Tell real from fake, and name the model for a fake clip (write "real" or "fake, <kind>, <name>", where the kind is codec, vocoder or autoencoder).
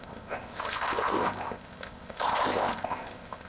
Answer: fake, codec, ZipCodec